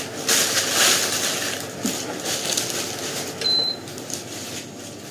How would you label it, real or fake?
real